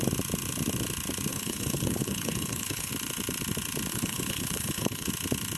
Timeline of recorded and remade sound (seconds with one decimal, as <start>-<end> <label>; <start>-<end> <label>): 0.0-1.3 recorded; 1.3-2.9 remade; 2.9-3.9 recorded; 3.9-5.1 remade; 5.1-5.6 recorded